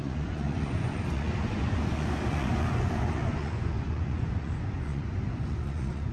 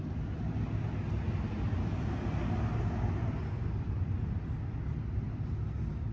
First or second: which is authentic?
second